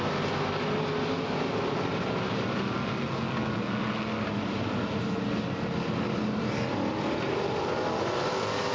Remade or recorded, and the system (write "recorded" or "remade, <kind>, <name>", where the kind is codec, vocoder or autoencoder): recorded